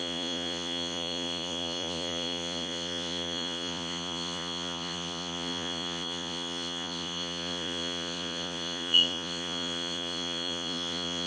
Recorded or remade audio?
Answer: remade